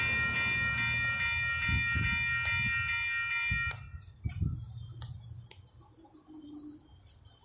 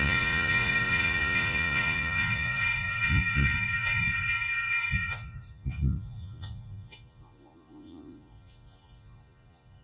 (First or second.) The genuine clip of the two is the first